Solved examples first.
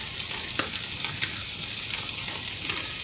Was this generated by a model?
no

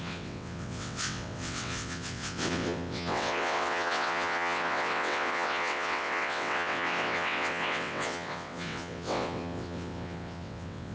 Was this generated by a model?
yes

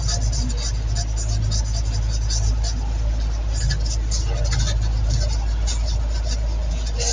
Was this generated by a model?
no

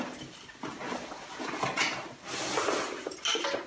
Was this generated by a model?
no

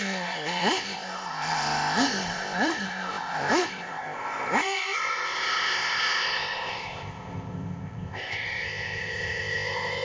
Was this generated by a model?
yes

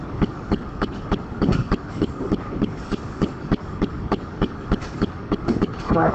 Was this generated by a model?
yes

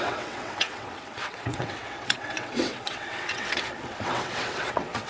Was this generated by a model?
yes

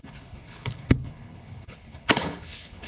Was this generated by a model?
yes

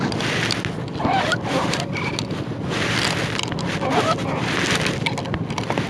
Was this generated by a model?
no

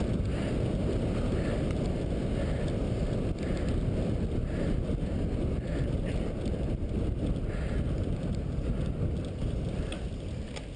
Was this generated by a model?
no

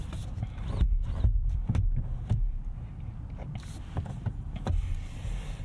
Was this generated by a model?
no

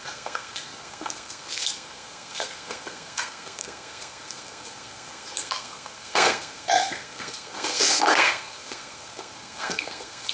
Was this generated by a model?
yes